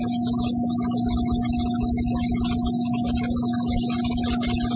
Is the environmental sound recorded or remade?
recorded